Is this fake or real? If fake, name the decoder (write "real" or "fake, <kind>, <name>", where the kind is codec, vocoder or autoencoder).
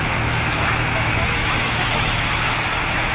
fake, autoencoder, DAC-VAE